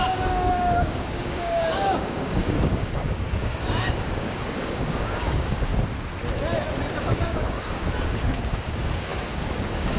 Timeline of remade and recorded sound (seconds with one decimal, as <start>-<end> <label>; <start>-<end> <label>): 0.0-5.7 remade; 5.7-7.0 recorded; 7.0-10.0 remade